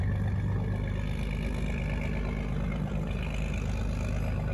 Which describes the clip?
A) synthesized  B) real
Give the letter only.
B